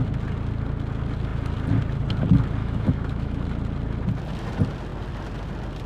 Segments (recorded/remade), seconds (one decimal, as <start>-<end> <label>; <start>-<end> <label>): 0.0-2.6 recorded; 2.6-3.4 remade; 3.4-5.9 recorded